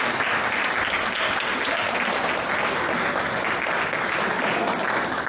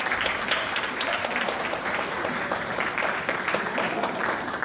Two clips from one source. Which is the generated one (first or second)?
second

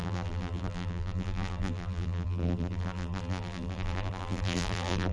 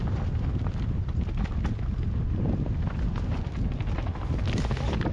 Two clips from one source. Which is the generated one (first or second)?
first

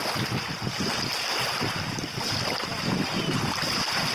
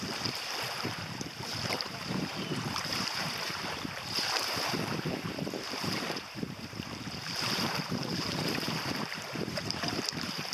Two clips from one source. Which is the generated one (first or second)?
second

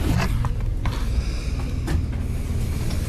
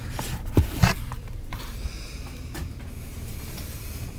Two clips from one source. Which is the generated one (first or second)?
second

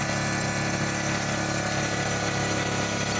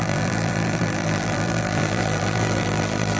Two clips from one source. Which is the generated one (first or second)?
second